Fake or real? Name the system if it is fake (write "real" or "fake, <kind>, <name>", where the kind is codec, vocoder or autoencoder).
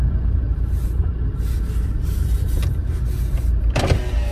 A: real